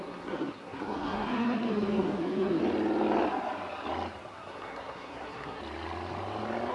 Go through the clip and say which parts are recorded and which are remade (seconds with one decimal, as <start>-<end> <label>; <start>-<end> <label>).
0.0-2.6 remade; 2.6-4.3 recorded; 4.3-5.6 remade; 5.6-6.7 recorded